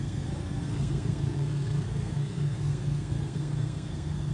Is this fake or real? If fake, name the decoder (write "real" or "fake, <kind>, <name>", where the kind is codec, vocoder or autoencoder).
fake, codec, SNAC